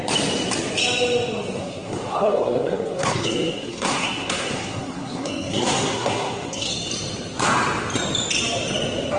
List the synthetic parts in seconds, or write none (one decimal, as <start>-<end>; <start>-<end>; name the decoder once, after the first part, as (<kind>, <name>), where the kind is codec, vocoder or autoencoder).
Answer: 1.6-6.7 (codec, SNAC)